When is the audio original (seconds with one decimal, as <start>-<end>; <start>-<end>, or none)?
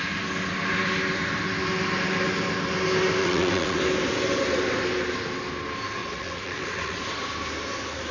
0.0-3.2; 3.8-6.0; 7.0-8.1